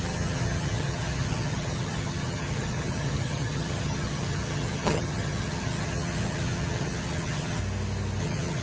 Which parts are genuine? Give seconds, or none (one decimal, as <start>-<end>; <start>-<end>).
7.6-8.2